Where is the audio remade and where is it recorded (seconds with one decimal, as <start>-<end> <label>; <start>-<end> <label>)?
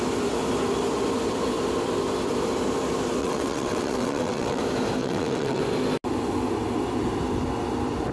0.0-3.2 recorded; 3.2-4.6 remade; 4.6-5.0 recorded; 5.0-5.6 remade; 5.6-8.1 recorded